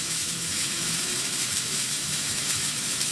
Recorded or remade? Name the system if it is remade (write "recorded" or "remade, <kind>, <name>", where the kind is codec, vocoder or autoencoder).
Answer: remade, autoencoder, DAC-VAE